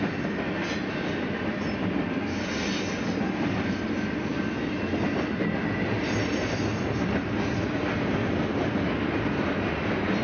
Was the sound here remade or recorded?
recorded